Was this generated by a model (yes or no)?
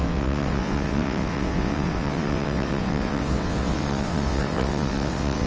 yes